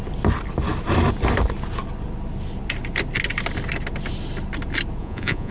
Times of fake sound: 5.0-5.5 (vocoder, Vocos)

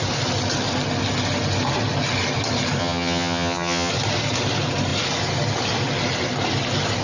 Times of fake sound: 2.8-3.9 (vocoder, HiFi-GAN)

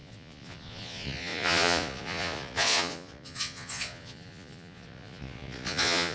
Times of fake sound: 0.0-6.1 (vocoder, Vocos)